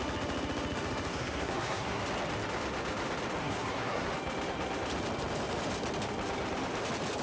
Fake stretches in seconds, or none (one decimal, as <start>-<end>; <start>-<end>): 1.1-2.0; 3.4-4.1